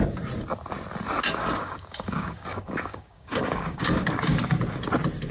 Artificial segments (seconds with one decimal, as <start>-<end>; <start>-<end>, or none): 1.4-4.6